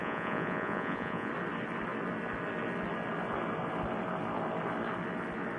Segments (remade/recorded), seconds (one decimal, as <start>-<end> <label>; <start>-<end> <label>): 0.0-1.3 remade; 1.3-5.6 recorded